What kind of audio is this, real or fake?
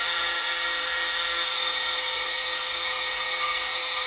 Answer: fake